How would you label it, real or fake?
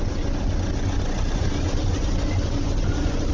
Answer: fake